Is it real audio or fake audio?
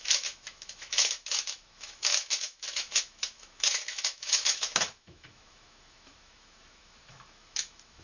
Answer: fake